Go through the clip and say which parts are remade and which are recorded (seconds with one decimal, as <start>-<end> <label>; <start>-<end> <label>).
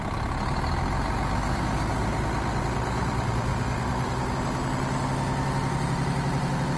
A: 0.0-6.8 recorded